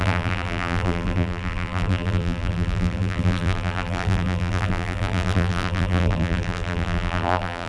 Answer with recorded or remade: remade